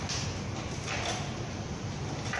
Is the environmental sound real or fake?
real